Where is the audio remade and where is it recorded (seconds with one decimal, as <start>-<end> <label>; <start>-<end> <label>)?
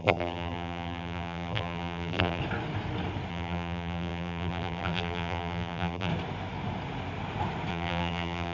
0.0-2.4 remade; 2.4-3.3 recorded; 3.3-6.1 remade; 6.1-7.7 recorded; 7.7-8.5 remade